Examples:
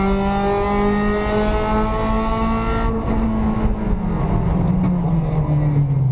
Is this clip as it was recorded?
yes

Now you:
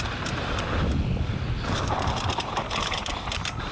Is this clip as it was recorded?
yes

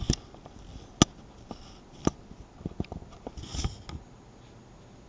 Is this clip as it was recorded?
yes